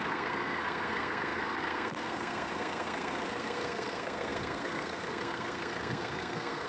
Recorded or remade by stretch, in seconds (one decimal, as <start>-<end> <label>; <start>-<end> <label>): 0.0-6.7 remade